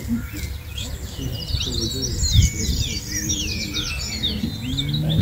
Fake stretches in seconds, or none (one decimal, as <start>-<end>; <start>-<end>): 2.4-3.4